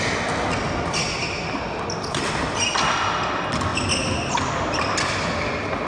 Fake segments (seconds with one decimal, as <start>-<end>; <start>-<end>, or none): none

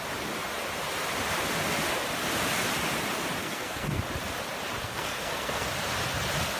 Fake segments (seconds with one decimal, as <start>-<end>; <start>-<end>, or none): 3.4-4.0; 4.8-5.7

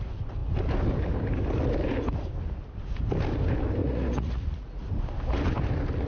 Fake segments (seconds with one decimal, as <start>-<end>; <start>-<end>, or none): 3.8-4.8

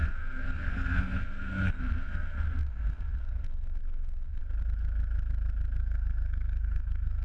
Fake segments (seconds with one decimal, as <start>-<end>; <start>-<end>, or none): 0.0-4.4; 5.8-7.2